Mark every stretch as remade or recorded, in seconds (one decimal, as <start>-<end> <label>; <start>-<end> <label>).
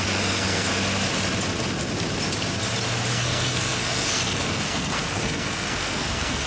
0.0-0.7 remade; 0.7-3.1 recorded; 3.1-6.5 remade